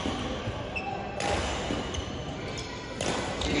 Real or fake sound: real